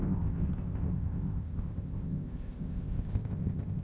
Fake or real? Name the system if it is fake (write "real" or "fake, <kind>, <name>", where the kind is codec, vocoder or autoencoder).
fake, codec, ZipCodec